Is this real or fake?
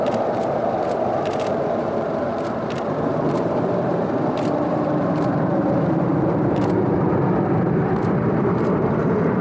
fake